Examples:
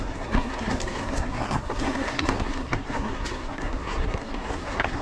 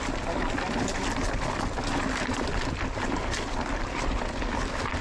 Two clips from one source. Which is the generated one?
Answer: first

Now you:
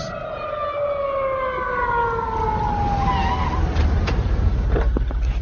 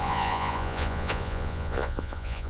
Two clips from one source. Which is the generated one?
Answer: second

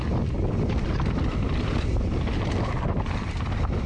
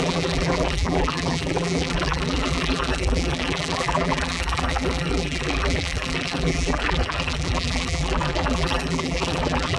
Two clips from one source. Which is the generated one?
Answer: second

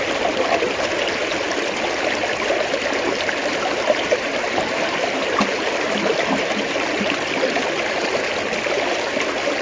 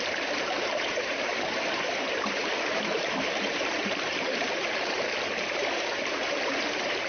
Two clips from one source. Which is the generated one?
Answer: second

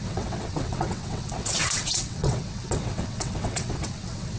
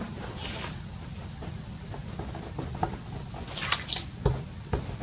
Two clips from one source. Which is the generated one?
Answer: first